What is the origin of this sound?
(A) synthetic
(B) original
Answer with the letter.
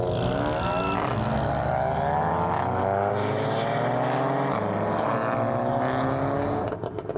B